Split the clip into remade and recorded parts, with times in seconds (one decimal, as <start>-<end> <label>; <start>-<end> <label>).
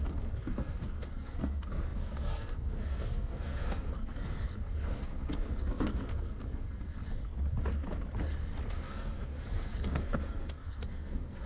0.0-7.0 remade; 7.0-8.7 recorded; 8.7-11.5 remade